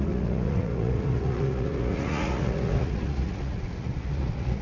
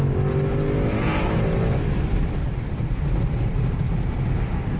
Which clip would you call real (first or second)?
second